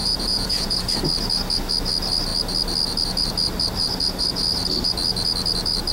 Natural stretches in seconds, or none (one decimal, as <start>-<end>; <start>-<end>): 0.8-5.9